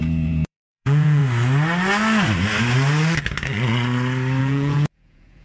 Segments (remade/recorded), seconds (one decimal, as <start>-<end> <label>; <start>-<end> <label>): 0.0-1.2 remade; 1.2-4.4 recorded; 4.4-5.4 remade